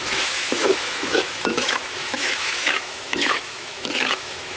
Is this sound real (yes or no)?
no